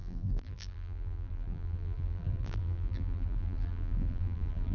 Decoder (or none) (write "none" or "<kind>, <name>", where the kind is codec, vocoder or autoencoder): vocoder, BigVGAN v2